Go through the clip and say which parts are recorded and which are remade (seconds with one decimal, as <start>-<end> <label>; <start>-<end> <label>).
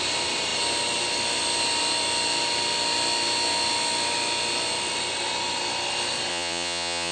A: 0.0-6.3 recorded; 6.3-7.1 remade